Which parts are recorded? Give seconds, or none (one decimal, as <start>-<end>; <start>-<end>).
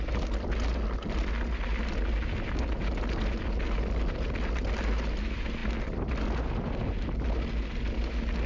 0.0-8.5